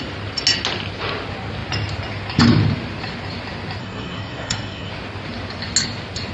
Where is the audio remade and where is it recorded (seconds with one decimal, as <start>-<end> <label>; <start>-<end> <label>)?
0.0-3.8 recorded; 3.8-4.9 remade; 4.9-6.3 recorded